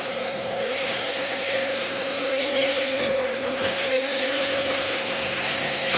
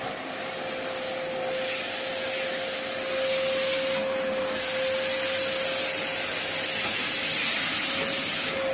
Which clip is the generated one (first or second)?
first